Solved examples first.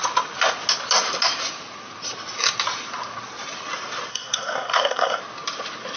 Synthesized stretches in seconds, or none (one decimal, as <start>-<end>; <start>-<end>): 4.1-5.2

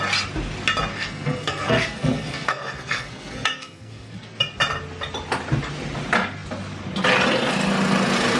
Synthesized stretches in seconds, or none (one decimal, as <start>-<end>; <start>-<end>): 0.9-4.4

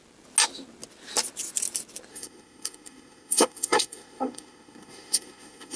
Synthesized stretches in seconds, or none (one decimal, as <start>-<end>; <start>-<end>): 2.1-5.8